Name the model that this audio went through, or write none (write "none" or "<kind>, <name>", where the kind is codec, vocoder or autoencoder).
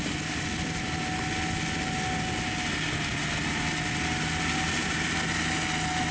none